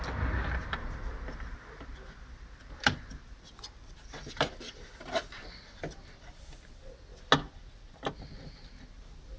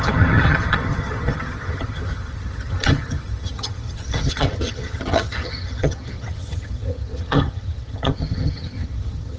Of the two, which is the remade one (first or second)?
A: second